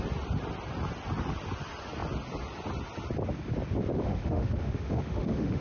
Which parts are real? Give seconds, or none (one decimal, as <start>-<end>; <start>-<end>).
0.0-3.9